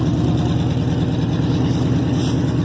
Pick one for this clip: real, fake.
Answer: real